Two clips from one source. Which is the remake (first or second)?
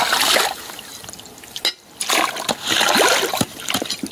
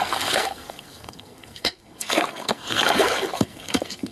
second